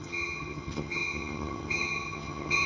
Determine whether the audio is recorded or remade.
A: remade